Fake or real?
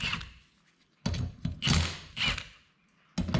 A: real